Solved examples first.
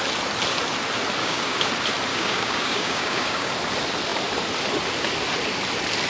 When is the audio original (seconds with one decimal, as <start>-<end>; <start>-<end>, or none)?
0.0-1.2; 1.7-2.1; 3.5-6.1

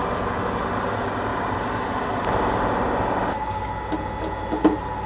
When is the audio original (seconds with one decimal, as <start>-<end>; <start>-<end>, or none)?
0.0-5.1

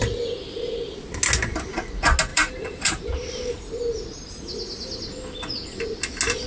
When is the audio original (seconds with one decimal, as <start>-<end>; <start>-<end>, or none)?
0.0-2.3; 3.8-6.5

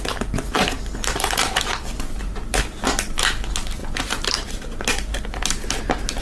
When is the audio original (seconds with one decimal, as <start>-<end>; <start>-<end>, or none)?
0.0-3.8; 4.8-6.2

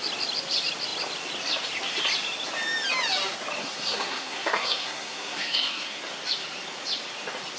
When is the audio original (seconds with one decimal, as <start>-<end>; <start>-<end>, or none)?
0.0-3.6; 6.0-7.6